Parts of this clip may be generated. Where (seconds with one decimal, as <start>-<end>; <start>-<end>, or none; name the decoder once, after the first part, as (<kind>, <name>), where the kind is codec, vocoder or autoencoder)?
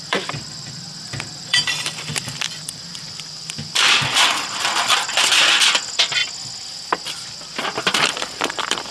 0.0-6.2 (vocoder, BigVGAN v2); 7.1-8.9